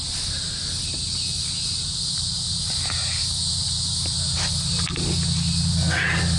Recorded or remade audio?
recorded